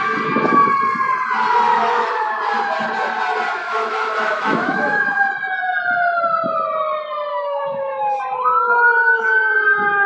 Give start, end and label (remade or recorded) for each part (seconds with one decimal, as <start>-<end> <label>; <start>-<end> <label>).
0.0-1.7 recorded; 1.7-2.4 remade; 2.4-3.6 recorded; 3.6-5.3 remade; 5.3-7.3 recorded; 7.3-8.2 remade; 8.2-9.0 recorded; 9.0-9.5 remade; 9.5-10.1 recorded